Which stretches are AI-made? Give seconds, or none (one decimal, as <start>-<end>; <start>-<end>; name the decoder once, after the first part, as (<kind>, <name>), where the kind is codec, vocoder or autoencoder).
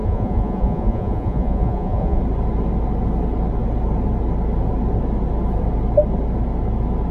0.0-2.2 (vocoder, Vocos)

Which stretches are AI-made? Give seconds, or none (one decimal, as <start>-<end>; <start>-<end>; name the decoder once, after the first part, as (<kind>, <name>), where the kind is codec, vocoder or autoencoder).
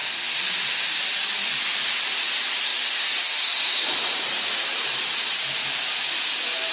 none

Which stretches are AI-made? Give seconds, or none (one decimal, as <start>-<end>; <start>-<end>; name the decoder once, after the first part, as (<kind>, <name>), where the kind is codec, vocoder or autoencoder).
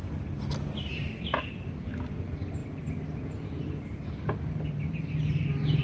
0.0-1.5 (vocoder, BigVGAN v2); 2.6-5.8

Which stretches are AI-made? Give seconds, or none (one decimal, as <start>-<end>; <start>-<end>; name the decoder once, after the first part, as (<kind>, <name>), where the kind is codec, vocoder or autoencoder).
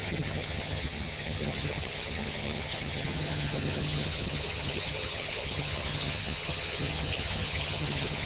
0.0-8.3 (vocoder, HiFi-GAN)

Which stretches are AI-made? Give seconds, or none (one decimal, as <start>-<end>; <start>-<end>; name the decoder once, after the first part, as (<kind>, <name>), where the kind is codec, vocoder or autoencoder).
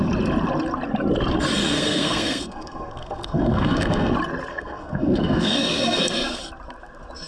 1.6-4.1 (codec, SNAC); 4.5-6.4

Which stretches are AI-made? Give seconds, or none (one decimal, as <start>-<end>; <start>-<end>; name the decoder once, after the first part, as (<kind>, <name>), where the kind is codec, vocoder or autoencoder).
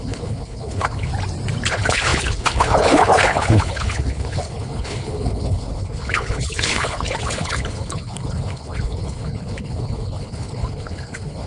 0.0-1.1 (codec, HILCodec); 1.7-11.5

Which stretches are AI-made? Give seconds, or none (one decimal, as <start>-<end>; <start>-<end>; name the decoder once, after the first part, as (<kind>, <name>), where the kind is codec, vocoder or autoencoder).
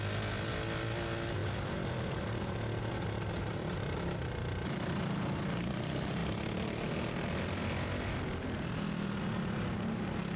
1.4-2.4 (vocoder, BigVGAN v2); 3.6-5.0; 6.2-9.2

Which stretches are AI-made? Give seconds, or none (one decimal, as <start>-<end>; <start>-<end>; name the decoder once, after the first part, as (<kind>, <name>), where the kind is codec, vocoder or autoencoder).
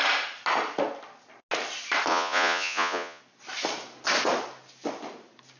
2.1-3.2 (vocoder, Vocos)